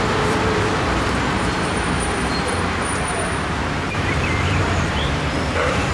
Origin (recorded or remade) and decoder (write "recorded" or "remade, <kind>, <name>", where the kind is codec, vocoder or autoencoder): remade, vocoder, BigVGAN v2